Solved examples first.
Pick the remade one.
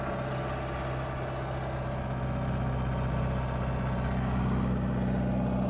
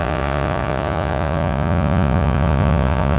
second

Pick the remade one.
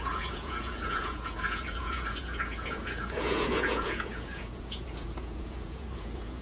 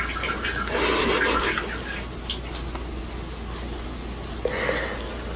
first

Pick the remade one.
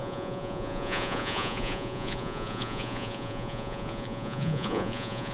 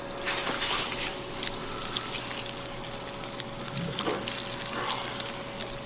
first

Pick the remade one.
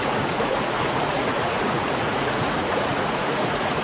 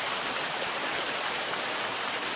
first